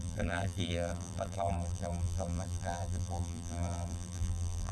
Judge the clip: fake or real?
fake